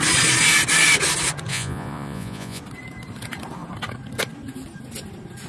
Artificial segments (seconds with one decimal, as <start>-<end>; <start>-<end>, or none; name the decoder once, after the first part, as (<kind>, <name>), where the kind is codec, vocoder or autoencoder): 1.5-2.6 (vocoder, Vocos)